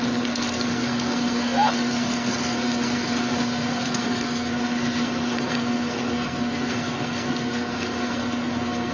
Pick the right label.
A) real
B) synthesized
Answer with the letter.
B